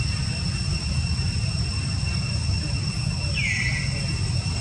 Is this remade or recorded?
recorded